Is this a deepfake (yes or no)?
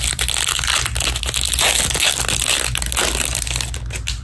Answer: no